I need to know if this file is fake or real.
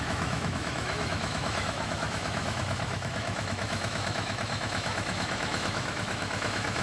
fake